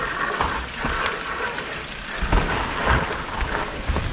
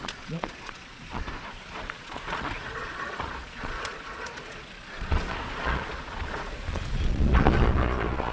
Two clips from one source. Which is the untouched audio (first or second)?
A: first